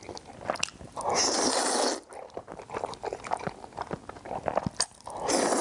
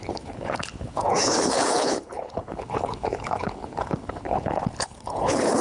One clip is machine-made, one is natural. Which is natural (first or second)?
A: first